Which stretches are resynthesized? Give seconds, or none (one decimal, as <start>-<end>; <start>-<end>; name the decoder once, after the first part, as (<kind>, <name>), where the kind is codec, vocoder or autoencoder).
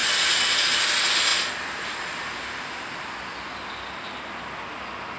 none